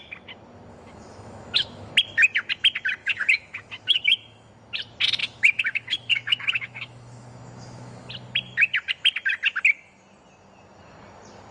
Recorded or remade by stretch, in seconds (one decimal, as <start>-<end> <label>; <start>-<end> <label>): 0.0-0.7 recorded; 0.7-1.9 remade; 1.9-3.0 recorded; 3.0-4.5 remade; 4.5-5.2 recorded; 5.2-8.1 remade; 8.1-11.5 recorded